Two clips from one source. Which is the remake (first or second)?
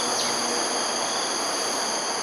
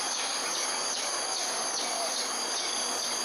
second